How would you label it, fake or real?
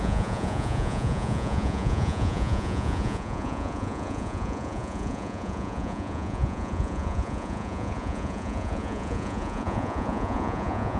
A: fake